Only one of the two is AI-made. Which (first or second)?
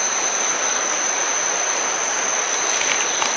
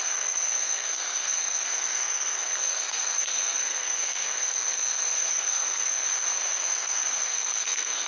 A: second